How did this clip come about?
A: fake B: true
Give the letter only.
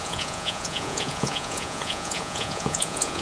A